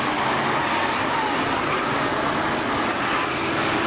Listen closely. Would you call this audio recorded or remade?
recorded